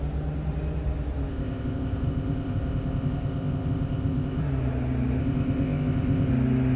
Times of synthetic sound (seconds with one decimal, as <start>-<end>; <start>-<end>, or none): 1.3-4.4; 5.2-6.3